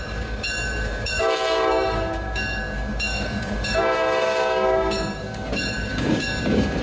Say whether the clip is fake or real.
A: fake